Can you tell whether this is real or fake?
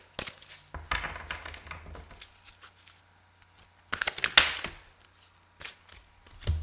real